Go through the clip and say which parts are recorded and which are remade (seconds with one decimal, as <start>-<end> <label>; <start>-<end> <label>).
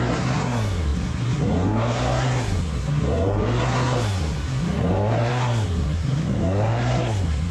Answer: 0.0-7.5 remade